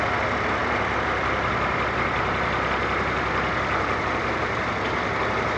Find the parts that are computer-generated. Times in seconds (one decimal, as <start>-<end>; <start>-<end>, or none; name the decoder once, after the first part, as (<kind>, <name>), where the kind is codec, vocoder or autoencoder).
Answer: none